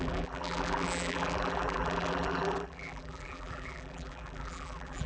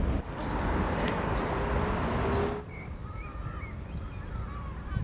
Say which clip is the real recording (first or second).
second